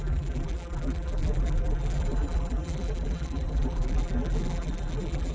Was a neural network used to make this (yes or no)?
yes